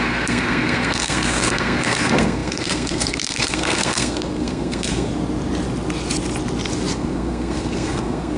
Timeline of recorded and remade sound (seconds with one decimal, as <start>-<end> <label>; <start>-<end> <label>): 0.0-5.1 remade; 5.1-6.9 recorded; 6.9-8.4 remade